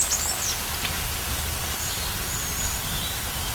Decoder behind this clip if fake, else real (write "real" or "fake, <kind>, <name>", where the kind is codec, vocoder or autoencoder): real